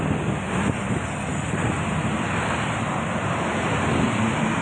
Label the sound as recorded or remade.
recorded